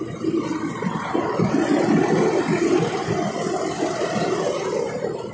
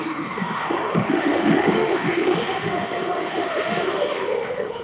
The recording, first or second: first